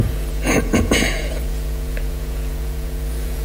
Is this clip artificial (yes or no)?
yes